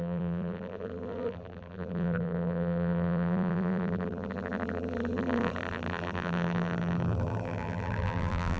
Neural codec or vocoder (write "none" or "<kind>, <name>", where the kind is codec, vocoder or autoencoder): vocoder, BigVGAN v2